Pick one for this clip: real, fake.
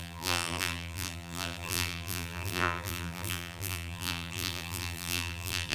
fake